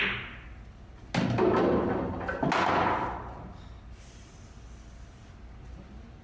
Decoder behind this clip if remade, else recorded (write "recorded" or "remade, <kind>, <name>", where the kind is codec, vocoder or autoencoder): recorded